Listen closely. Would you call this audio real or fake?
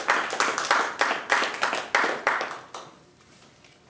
real